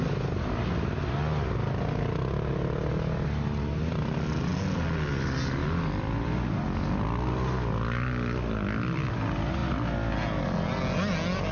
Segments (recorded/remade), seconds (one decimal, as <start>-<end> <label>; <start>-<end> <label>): 0.0-5.6 recorded; 5.6-9.2 remade; 9.2-9.6 recorded; 9.6-10.4 remade; 10.4-11.5 recorded